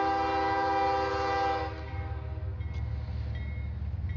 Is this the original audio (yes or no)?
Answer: yes